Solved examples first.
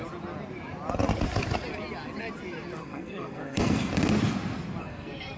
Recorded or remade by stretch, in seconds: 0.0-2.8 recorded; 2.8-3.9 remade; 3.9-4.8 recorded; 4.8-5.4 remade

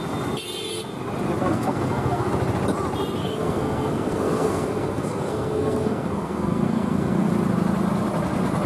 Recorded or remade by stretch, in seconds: 0.0-1.4 recorded; 1.4-2.3 remade; 2.3-3.2 recorded; 3.2-7.3 remade; 7.3-8.7 recorded

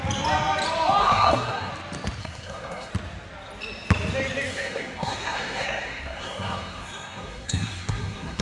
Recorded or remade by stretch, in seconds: 0.0-1.0 recorded; 1.0-1.7 remade; 1.7-2.2 recorded; 2.2-2.9 remade; 2.9-4.5 recorded; 4.5-8.4 remade

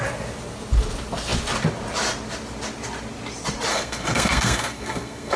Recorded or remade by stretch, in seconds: 0.0-3.7 recorded; 3.7-5.4 remade

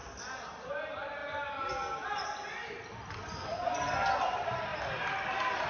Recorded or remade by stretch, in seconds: 0.0-5.7 recorded

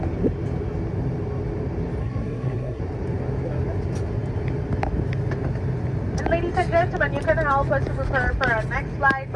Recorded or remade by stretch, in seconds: 0.0-2.0 recorded; 2.0-2.8 remade; 2.8-9.4 recorded